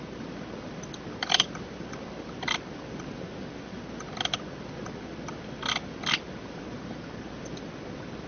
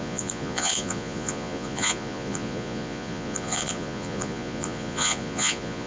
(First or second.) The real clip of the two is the first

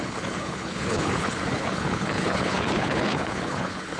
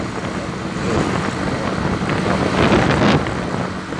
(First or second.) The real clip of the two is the second